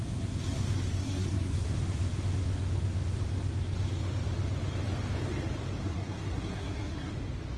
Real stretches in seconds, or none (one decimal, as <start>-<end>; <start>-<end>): 0.0-1.0; 1.7-5.8; 7.1-7.6